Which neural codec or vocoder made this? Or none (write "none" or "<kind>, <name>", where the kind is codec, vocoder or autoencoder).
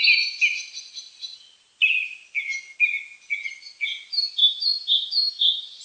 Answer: none